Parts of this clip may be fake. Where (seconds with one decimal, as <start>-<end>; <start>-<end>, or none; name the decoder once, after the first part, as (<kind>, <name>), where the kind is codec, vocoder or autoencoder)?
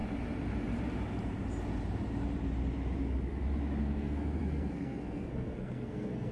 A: 3.8-6.3 (codec, SNAC)